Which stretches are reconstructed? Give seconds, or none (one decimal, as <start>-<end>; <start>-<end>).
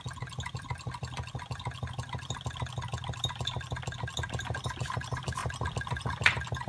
none